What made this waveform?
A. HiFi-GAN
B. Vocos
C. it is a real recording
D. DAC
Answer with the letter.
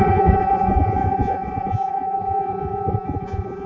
B